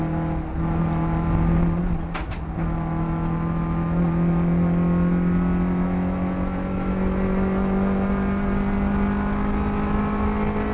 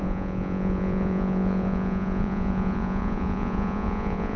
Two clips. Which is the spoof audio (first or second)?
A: second